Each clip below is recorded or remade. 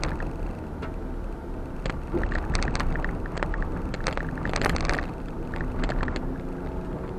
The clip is recorded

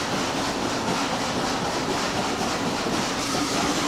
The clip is recorded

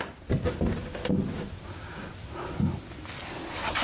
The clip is remade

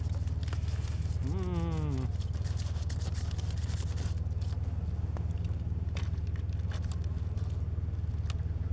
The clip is recorded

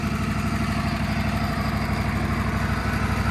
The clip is recorded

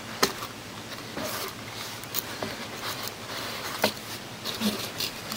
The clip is remade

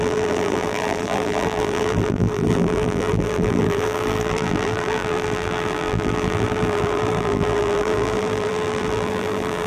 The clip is remade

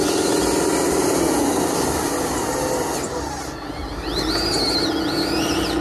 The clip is recorded